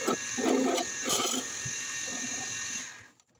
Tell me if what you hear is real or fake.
real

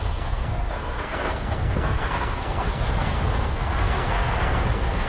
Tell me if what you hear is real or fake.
fake